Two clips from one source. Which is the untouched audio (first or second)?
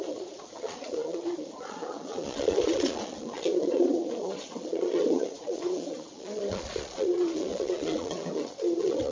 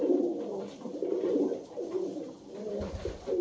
second